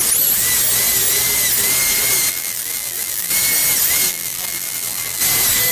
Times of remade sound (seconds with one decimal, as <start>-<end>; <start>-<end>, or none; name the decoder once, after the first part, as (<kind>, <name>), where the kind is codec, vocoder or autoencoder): 2.3-3.3 (vocoder, BigVGAN v2); 4.1-5.2